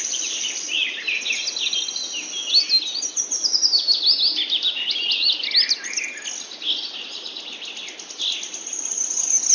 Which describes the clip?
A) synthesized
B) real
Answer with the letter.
B